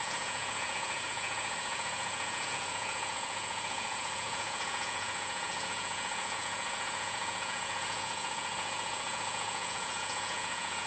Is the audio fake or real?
fake